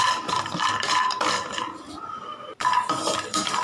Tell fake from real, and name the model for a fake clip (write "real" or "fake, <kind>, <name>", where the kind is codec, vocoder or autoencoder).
fake, vocoder, BigVGAN v2